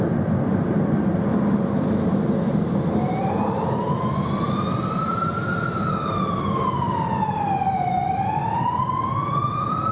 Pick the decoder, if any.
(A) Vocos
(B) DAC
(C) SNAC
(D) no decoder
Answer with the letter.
D